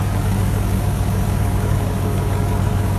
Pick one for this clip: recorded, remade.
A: remade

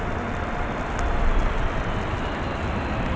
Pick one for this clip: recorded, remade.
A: recorded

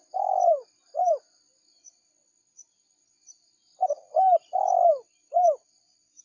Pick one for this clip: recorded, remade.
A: recorded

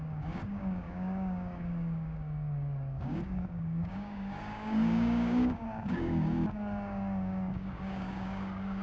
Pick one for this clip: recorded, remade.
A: remade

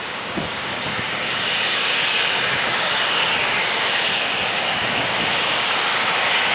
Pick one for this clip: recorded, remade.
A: remade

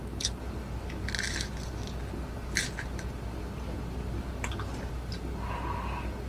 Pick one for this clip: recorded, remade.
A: recorded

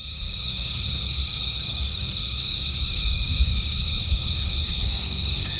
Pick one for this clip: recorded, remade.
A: remade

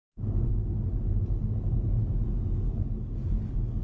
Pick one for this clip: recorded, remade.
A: recorded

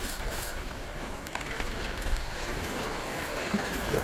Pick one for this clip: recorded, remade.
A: remade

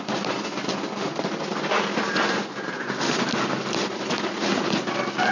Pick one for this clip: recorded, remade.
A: recorded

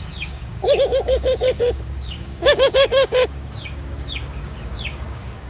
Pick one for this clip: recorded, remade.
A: remade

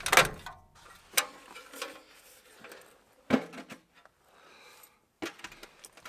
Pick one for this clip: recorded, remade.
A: recorded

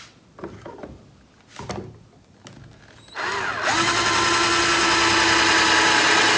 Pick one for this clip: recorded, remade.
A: recorded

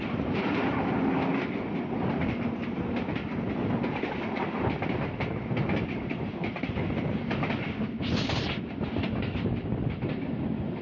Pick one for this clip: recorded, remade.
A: recorded